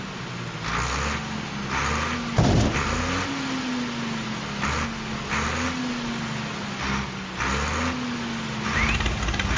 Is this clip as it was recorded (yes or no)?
yes